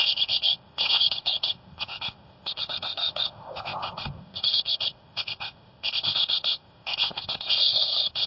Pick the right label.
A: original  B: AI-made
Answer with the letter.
B